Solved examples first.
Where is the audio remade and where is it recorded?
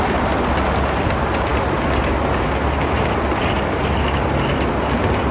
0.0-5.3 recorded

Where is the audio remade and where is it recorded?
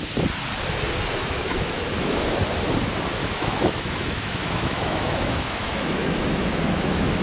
0.0-1.2 recorded; 1.2-2.2 remade; 2.2-3.2 recorded; 3.2-7.2 remade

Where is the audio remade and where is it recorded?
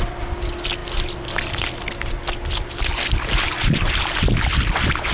0.0-5.1 recorded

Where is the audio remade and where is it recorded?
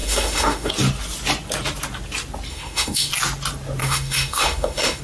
0.0-0.7 remade; 0.7-2.5 recorded; 2.5-3.1 remade; 3.1-3.8 recorded; 3.8-5.0 remade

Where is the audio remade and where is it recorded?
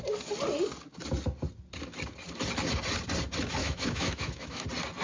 0.0-3.6 recorded; 3.6-4.6 remade; 4.6-5.0 recorded